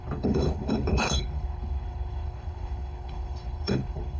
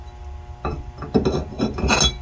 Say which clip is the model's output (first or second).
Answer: first